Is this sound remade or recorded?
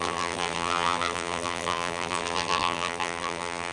remade